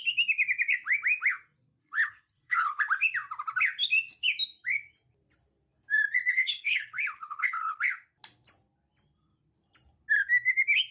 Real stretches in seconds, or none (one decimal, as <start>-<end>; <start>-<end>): 0.0-1.8; 2.8-6.3; 7.8-10.9